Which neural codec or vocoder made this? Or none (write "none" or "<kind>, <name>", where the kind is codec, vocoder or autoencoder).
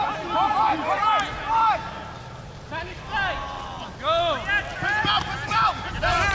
none